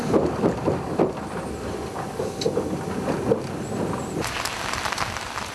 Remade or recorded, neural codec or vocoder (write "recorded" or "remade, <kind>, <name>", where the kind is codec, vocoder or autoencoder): recorded